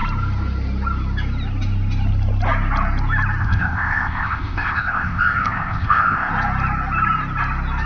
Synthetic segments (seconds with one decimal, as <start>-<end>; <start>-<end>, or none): 3.4-6.3